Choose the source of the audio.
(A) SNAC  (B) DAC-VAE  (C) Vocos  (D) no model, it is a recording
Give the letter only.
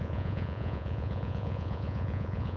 C